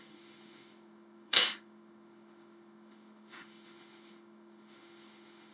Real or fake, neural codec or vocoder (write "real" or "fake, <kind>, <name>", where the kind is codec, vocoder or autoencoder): fake, autoencoder, DAC-VAE